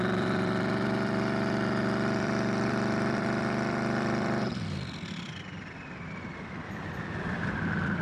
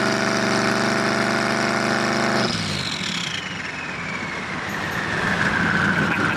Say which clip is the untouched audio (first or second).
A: second